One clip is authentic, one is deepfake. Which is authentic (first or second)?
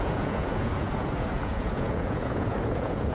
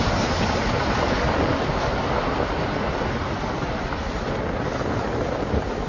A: second